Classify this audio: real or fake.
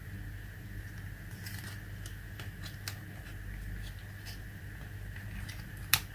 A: real